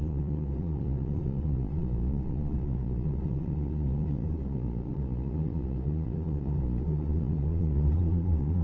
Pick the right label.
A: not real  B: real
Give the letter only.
A